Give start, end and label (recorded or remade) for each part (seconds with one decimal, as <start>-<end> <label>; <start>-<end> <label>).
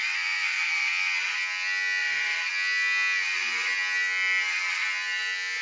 0.0-0.9 remade; 0.9-2.0 recorded; 2.0-2.5 remade; 2.5-5.6 recorded